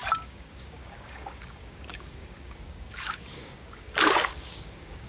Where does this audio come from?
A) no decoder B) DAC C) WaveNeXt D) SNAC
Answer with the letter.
B